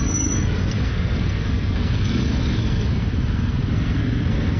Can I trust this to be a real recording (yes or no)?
no